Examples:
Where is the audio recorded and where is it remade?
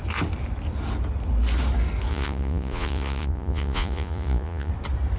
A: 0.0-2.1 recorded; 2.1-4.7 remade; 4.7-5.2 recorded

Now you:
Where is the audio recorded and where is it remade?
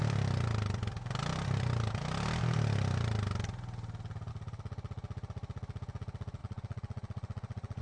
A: 0.0-6.4 recorded; 6.4-7.8 remade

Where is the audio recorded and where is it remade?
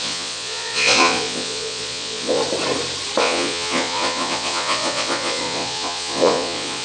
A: 0.0-2.4 remade; 2.4-3.2 recorded; 3.2-6.8 remade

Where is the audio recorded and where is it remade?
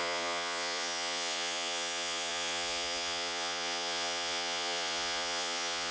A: 0.0-5.9 remade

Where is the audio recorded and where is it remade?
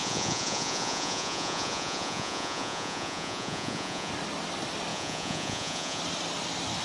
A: 0.0-4.1 remade; 4.1-4.9 recorded; 4.9-6.0 remade; 6.0-6.8 recorded